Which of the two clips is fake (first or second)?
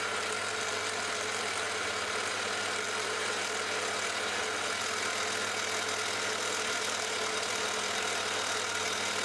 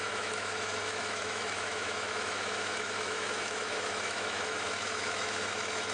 second